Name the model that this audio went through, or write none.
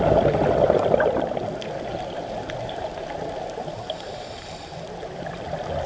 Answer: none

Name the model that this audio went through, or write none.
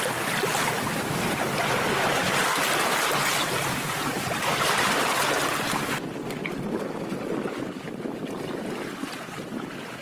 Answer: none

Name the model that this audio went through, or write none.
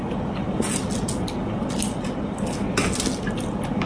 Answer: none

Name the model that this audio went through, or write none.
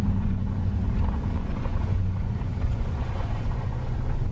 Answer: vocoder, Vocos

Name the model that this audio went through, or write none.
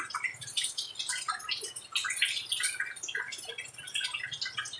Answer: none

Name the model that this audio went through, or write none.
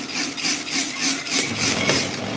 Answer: none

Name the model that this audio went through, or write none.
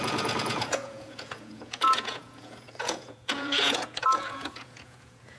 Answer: vocoder, Vocos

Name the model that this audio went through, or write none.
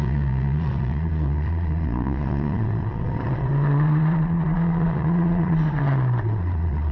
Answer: vocoder, Vocos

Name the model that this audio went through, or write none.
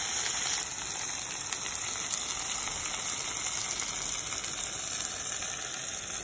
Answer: none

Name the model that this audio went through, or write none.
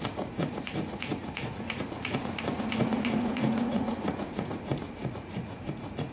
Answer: vocoder, Vocos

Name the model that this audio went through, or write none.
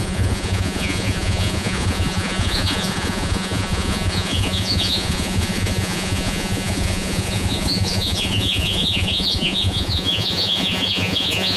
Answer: vocoder, Vocos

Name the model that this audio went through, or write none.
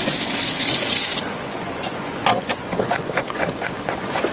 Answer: vocoder, Vocos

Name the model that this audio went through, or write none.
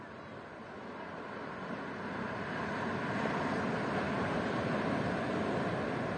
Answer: none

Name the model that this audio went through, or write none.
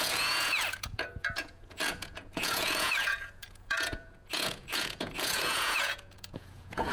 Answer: vocoder, Vocos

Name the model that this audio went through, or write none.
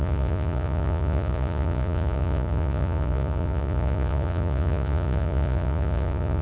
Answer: vocoder, Vocos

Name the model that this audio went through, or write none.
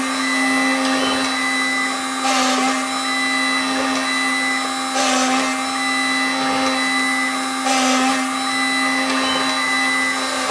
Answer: none